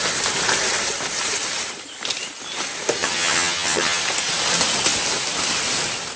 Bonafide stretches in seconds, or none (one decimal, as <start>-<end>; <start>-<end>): 0.0-3.0; 4.0-6.2